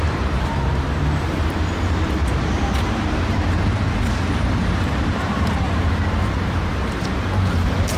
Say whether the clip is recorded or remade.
remade